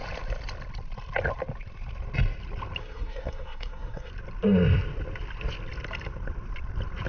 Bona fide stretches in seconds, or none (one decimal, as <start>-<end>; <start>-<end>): 0.0-2.8; 4.1-7.1